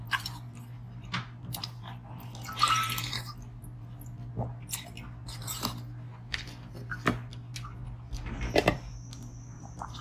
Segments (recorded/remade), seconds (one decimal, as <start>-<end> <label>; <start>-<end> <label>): 0.0-10.0 recorded